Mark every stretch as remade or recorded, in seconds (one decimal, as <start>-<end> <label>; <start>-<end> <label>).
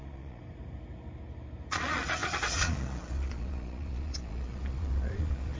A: 0.0-0.4 remade; 0.4-1.7 recorded; 1.7-5.6 remade